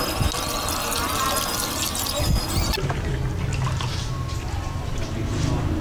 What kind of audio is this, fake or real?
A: real